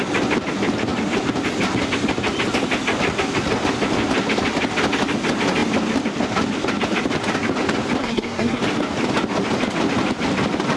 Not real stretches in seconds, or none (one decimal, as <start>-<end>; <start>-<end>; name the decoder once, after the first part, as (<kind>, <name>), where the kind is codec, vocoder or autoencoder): 8.0-8.6 (codec, SNAC)